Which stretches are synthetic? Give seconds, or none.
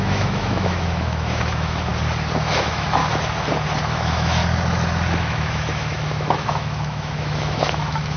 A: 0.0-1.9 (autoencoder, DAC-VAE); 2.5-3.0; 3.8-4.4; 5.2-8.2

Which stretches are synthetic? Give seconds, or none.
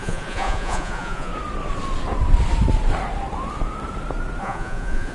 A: 0.0-1.3 (vocoder, Vocos); 4.4-5.1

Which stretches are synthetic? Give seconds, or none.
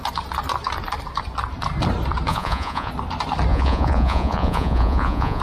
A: 2.3-2.9 (vocoder, Vocos); 3.5-5.4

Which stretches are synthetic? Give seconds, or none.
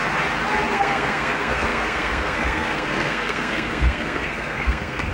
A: 0.7-5.1 (codec, SNAC)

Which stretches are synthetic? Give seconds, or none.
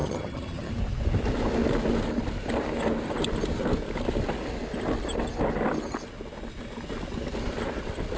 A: 0.0-0.7 (vocoder, HiFi-GAN)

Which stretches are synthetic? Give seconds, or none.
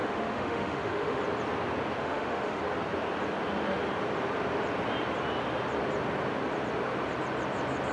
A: 0.0-1.2 (autoencoder, DAC-VAE); 2.0-2.6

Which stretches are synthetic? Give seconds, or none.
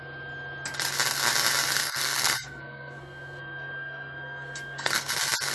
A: 1.8-5.1 (codec, SNAC)